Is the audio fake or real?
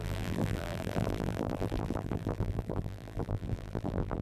fake